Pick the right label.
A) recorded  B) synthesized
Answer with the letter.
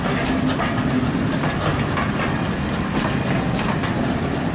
A